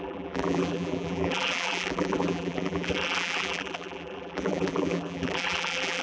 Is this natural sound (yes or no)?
no